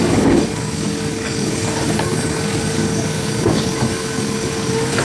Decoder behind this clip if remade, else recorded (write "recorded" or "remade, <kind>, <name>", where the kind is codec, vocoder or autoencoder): remade, codec, DAC